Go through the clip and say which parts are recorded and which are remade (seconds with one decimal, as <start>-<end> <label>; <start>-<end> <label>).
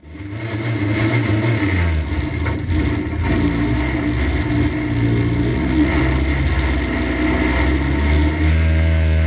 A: 0.0-5.5 recorded; 5.5-6.0 remade; 6.0-9.3 recorded